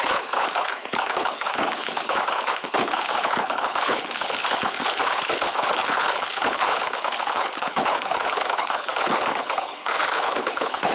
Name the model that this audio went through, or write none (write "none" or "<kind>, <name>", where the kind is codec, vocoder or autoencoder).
codec, HILCodec